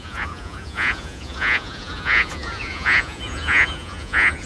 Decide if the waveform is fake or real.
fake